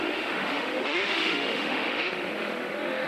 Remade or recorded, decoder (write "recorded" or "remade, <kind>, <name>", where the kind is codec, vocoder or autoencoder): remade, autoencoder, DAC-VAE